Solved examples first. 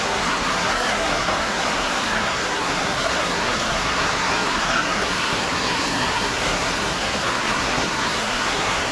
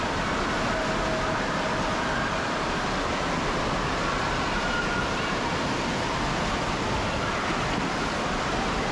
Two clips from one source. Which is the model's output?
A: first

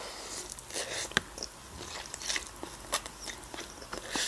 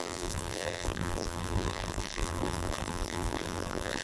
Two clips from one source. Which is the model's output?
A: second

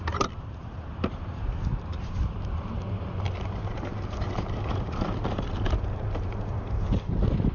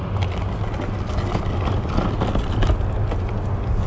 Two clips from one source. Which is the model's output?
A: first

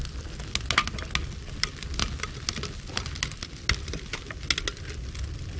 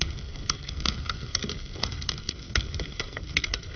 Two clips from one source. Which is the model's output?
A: second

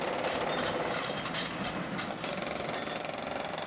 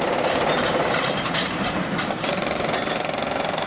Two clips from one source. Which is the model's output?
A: second